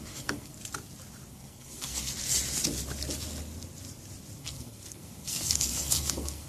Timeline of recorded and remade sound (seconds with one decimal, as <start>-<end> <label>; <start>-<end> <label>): 0.0-0.5 remade; 0.5-1.3 recorded; 1.3-2.1 remade; 2.1-4.4 recorded; 4.4-6.5 remade